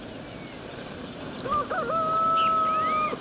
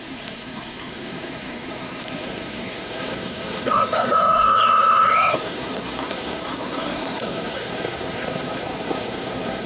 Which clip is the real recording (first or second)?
first